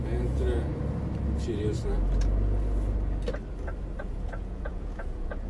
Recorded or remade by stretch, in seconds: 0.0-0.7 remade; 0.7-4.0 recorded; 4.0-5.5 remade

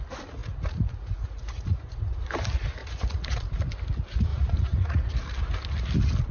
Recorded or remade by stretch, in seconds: 0.0-0.4 recorded; 0.4-2.3 remade; 2.3-2.8 recorded; 2.8-3.6 remade; 3.6-4.3 recorded; 4.3-5.1 remade; 5.1-6.3 recorded

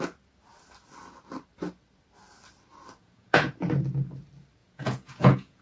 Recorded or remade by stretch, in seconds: 0.0-3.0 recorded; 3.0-3.5 remade; 3.5-4.6 recorded; 4.6-5.6 remade

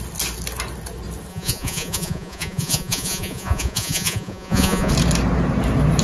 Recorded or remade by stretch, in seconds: 0.0-1.3 recorded; 1.3-4.9 remade; 4.9-6.0 recorded

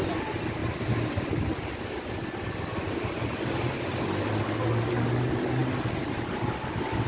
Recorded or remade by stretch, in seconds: 0.0-7.1 recorded

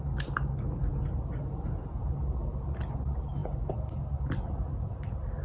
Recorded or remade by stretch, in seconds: 0.0-5.4 recorded